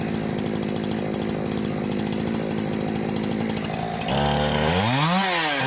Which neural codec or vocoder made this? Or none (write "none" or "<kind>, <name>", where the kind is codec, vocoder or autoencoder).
none